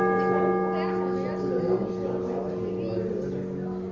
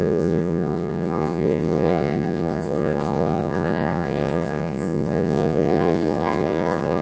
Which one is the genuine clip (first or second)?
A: first